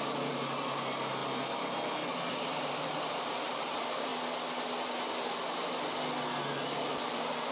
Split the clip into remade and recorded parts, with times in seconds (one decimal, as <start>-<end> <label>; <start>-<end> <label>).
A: 0.0-1.2 remade; 1.2-2.3 recorded; 2.3-4.1 remade; 4.1-7.0 recorded; 7.0-7.5 remade